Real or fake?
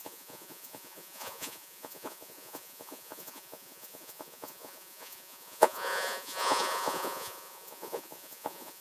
fake